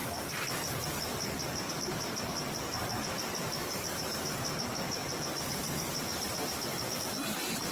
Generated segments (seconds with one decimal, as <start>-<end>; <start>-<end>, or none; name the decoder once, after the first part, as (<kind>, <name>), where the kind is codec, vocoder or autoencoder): 3.6-4.2 (vocoder, BigVGAN v2)